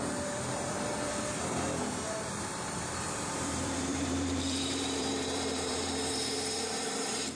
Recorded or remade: remade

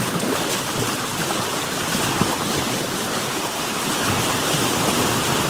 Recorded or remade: recorded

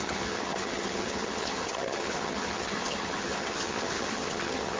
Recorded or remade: remade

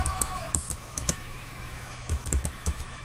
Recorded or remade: remade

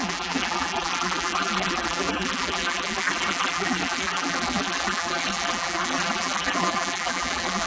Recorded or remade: remade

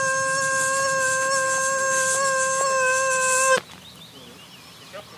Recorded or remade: recorded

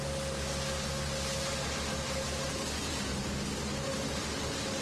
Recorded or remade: recorded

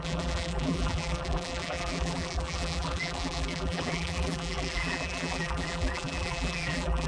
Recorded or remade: remade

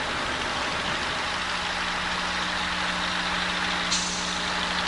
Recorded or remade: recorded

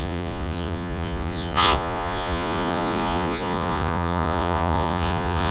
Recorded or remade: remade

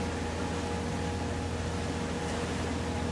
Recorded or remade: recorded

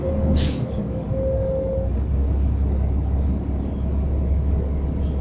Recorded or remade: remade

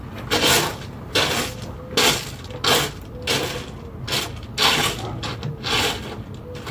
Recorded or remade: recorded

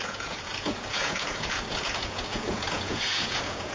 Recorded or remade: remade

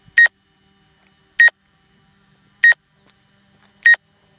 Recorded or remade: recorded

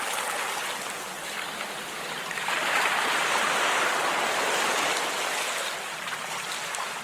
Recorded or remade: recorded